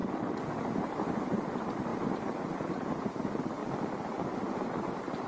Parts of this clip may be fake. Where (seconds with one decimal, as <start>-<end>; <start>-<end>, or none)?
0.0-3.6; 4.4-5.3